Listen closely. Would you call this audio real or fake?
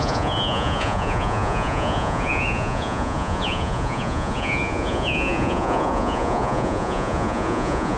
fake